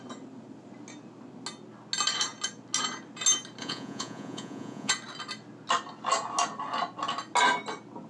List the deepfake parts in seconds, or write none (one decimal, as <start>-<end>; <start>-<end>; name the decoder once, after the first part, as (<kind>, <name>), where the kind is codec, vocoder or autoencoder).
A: 3.6-4.9 (vocoder, Vocos)